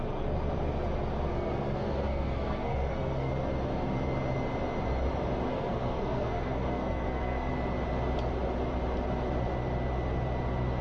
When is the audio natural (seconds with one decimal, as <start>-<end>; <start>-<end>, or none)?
0.0-1.3; 3.3-5.5; 7.5-10.8